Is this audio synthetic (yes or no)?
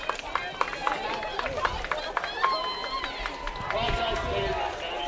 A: no